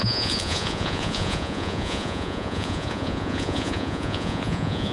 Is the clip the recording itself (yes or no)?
no